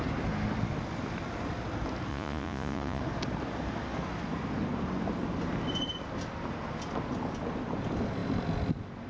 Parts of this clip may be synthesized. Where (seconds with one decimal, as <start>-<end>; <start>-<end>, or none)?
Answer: 2.1-3.0